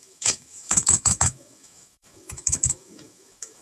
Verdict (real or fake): fake